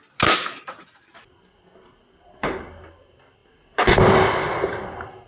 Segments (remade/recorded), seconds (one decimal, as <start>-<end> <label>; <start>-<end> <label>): 0.0-5.3 recorded